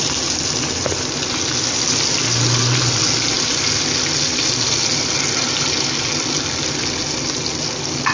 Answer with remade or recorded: recorded